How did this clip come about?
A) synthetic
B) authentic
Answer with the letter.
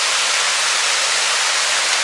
B